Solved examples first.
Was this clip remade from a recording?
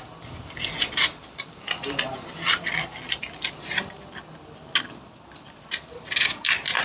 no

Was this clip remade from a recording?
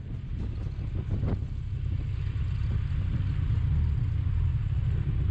no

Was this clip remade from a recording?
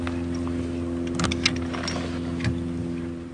no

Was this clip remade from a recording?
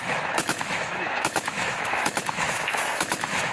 yes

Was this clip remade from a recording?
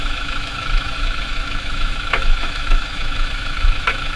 yes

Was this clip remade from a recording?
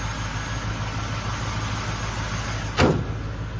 no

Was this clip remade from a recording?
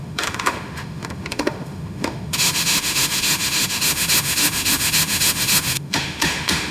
yes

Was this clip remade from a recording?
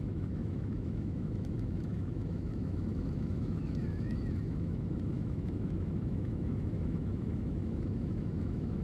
yes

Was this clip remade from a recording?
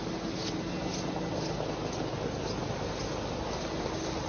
no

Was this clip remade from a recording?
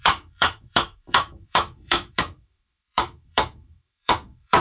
yes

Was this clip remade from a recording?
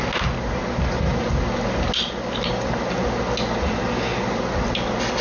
no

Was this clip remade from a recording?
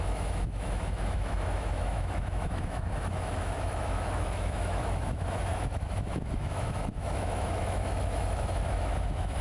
yes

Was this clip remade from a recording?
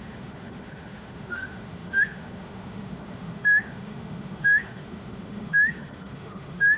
yes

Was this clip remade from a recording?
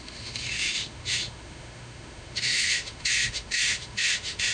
yes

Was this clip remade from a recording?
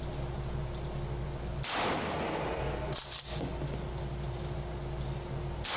no